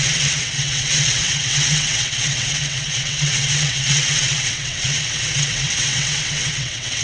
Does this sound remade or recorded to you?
remade